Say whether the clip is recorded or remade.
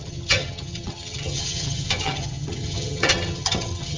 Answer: remade